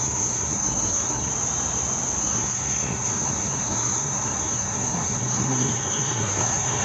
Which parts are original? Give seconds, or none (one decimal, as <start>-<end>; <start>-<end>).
1.3-2.2